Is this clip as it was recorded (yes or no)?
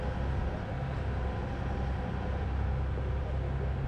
yes